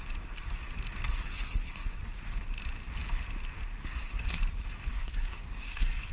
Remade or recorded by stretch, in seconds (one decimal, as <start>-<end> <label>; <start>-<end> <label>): 0.0-1.1 recorded; 1.1-2.0 remade; 2.0-3.8 recorded; 3.8-4.4 remade; 4.4-4.9 recorded; 4.9-6.1 remade

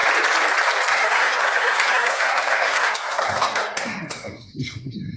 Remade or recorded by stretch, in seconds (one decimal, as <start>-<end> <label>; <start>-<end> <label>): 0.0-0.9 recorded; 0.9-5.2 remade

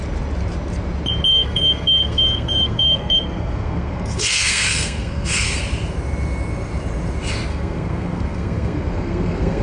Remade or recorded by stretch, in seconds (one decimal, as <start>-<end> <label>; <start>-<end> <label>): 0.0-1.3 recorded; 1.3-5.6 remade; 5.6-7.5 recorded; 7.5-9.6 remade